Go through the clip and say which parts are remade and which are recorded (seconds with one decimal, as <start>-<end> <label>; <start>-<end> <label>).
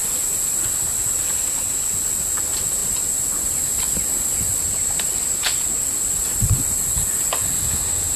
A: 0.0-2.8 recorded; 2.8-7.7 remade; 7.7-8.2 recorded